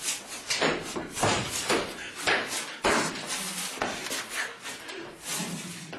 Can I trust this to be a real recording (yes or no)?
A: yes